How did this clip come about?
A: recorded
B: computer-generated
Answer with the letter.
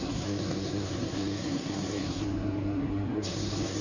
B